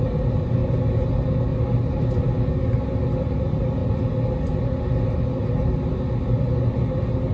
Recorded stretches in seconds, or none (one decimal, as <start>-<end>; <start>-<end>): 0.0-7.3